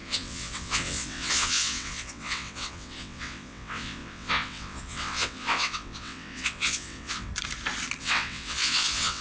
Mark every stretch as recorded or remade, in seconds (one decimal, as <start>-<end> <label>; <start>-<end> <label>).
0.0-7.3 remade; 7.3-8.0 recorded; 8.0-9.2 remade